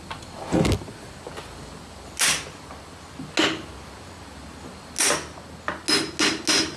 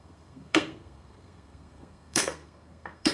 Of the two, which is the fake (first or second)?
second